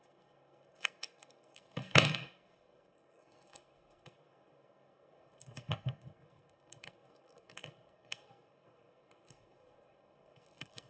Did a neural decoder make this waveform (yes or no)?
yes